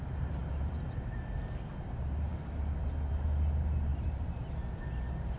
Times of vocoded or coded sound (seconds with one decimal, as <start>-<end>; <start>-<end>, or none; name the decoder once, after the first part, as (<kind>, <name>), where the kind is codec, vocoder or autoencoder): 3.9-4.5 (vocoder, BigVGAN v2)